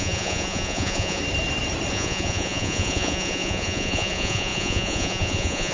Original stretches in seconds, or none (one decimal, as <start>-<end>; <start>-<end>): 1.2-1.9